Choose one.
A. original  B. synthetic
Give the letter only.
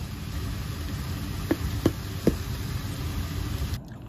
A